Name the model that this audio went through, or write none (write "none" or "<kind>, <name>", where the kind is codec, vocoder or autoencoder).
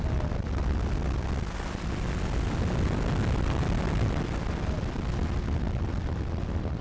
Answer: none